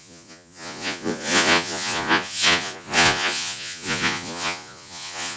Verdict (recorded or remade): remade